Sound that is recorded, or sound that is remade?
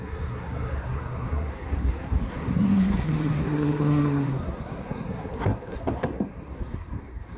remade